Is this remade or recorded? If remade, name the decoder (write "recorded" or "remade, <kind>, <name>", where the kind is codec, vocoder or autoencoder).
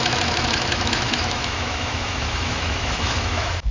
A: remade, autoencoder, DAC-VAE